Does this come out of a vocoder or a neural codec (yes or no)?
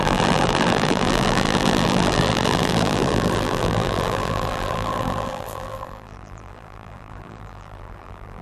yes